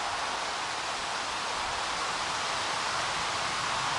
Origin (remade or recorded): recorded